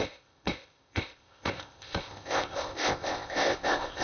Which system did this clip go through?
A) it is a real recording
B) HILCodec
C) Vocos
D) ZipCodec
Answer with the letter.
D